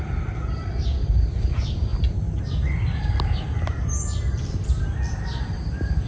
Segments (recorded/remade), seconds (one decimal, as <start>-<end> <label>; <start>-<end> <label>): 0.0-6.1 recorded